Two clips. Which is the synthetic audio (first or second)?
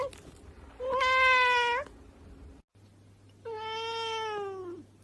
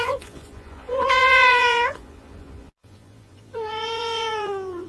second